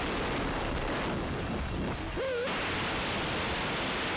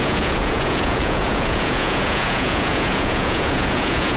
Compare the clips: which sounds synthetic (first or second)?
second